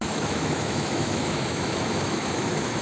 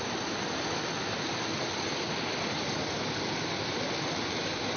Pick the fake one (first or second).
first